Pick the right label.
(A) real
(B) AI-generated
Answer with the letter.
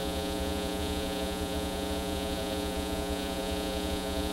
B